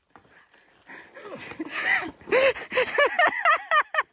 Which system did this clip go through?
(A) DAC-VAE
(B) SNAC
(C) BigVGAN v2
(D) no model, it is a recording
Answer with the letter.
D